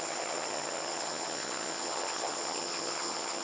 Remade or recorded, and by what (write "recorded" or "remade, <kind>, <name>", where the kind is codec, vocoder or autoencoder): remade, vocoder, HiFi-GAN